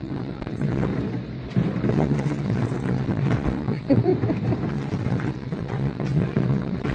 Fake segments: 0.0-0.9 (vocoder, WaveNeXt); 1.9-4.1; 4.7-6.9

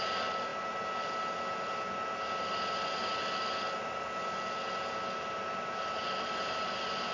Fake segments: none

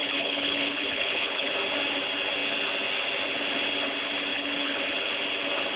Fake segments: 0.0-1.5 (codec, HILCodec); 4.3-4.8